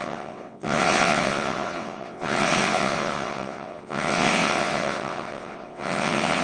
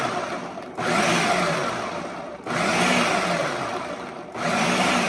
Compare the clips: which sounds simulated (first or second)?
first